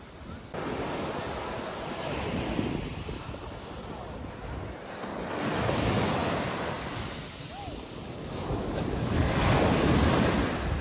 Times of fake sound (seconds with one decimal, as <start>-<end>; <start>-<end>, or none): none